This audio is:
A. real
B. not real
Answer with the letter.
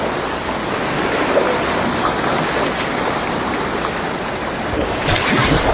A